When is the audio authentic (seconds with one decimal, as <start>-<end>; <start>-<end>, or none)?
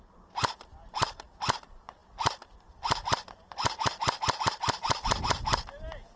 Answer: 0.0-6.2